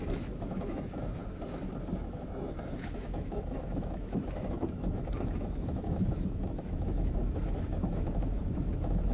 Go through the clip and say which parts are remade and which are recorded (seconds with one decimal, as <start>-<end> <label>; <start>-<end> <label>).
0.0-1.2 remade; 1.2-1.9 recorded; 1.9-9.1 remade